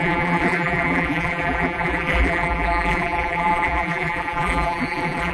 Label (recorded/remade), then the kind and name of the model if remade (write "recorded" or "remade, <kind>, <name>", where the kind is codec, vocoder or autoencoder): remade, vocoder, BigVGAN v2